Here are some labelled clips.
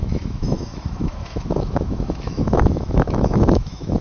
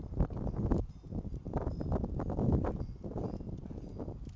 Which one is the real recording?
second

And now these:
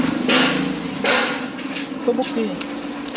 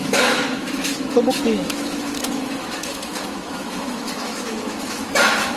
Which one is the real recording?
first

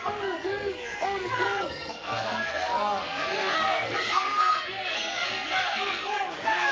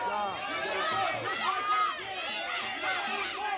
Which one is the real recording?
second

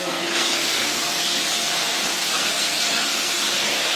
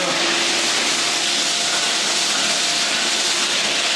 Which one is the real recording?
second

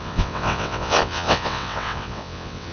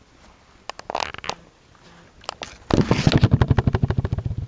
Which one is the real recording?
second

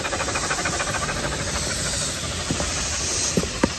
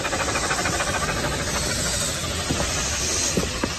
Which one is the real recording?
second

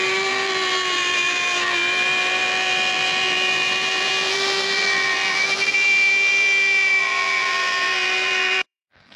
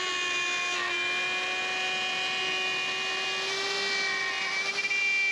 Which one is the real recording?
second